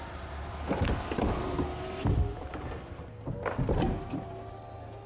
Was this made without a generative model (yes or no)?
yes